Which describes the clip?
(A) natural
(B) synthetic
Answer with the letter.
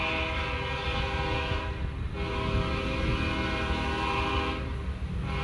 A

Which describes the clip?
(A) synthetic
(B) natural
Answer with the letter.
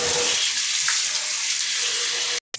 B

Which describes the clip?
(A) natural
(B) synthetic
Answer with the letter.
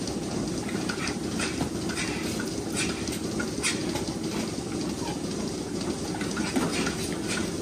A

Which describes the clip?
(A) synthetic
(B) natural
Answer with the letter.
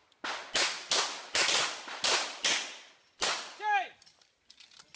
B